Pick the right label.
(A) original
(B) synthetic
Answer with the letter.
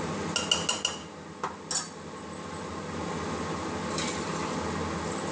A